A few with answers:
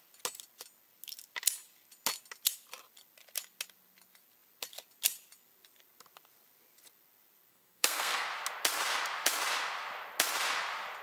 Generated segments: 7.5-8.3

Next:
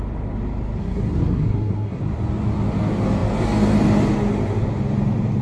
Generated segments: 0.8-2.0

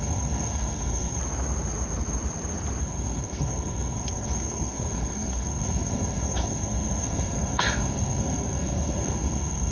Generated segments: 0.0-1.2; 2.8-9.7

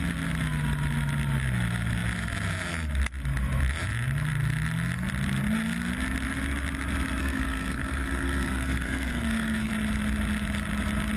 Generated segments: 7.2-9.7